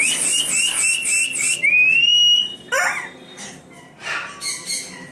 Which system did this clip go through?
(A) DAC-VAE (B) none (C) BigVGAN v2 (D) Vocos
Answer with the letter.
B